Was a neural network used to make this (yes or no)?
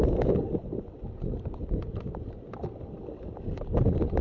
no